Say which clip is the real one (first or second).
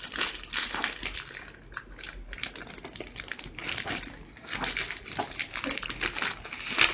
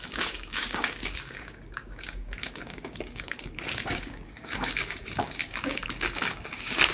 first